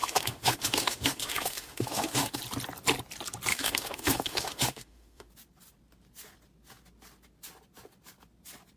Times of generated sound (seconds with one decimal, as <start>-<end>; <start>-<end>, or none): 0.0-2.4; 3.5-5.3